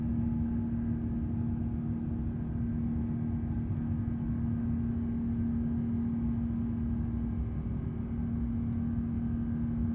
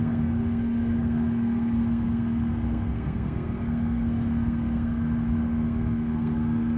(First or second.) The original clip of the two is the first